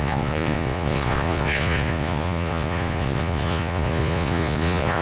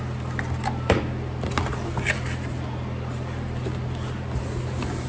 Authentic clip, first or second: second